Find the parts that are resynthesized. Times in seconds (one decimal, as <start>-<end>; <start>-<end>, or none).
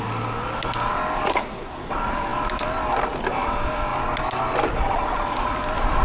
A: 1.3-1.9